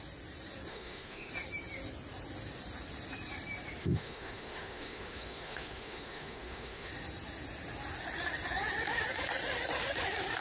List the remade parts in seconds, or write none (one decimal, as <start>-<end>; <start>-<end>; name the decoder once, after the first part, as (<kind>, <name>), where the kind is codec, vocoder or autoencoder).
0.7-1.3 (autoencoder, DAC-VAE); 3.8-6.9